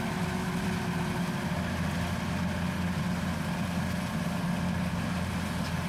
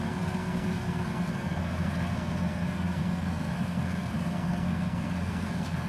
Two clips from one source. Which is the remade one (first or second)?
second